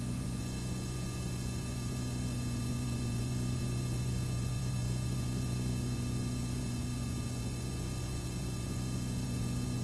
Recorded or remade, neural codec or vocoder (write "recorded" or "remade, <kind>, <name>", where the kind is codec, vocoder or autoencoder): remade, vocoder, Vocos